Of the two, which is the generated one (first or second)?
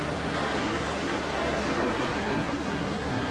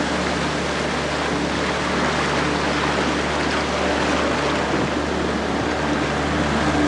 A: first